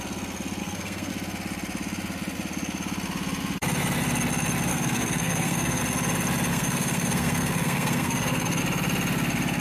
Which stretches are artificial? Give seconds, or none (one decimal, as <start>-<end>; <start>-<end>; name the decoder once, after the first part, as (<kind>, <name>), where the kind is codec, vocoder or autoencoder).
0.6-1.1 (codec, SNAC); 4.7-5.8; 6.5-8.6